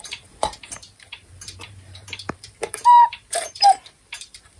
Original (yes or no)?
no